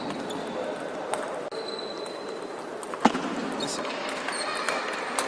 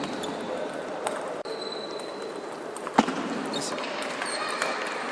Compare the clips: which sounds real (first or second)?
first